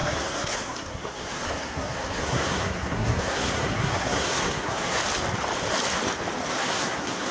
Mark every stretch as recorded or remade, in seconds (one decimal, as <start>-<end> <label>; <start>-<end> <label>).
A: 0.0-5.0 remade; 5.0-6.5 recorded; 6.5-7.3 remade